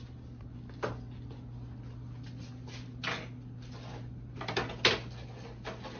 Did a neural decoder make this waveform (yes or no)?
no